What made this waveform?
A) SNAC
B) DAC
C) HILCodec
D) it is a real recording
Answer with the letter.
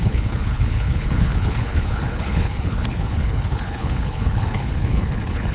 C